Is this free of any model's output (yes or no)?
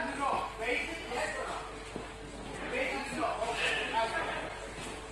yes